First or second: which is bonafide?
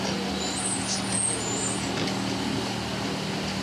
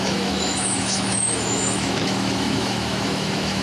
first